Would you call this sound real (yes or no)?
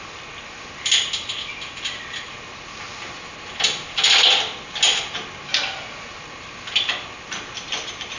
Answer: yes